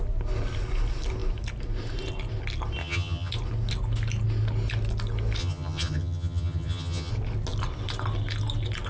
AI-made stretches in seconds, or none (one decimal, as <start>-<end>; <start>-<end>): 2.8-3.3; 5.4-7.1